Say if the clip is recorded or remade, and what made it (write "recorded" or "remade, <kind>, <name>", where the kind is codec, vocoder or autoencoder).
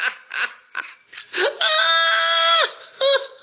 recorded